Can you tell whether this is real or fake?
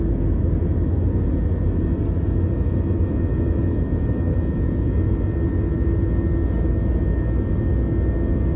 real